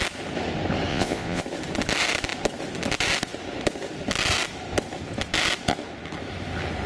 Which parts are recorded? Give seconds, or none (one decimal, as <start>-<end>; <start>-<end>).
0.0-0.9; 1.4-6.9